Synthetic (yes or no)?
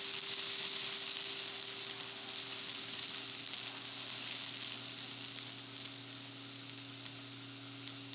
no